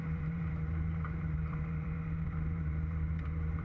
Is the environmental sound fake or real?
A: fake